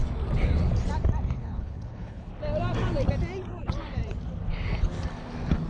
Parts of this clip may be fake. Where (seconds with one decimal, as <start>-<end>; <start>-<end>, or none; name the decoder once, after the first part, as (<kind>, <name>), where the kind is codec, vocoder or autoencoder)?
1.4-2.3 (codec, HILCodec)